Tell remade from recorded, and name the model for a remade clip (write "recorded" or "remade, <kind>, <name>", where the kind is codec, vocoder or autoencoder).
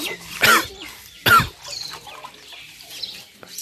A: recorded